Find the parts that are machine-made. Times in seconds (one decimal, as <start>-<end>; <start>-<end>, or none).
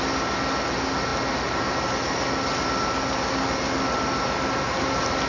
none